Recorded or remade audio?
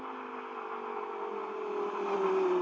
remade